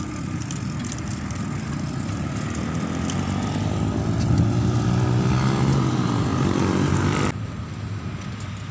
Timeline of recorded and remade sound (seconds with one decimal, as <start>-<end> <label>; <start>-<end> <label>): 0.0-8.7 recorded